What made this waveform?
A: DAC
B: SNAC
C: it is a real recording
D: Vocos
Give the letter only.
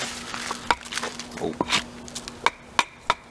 C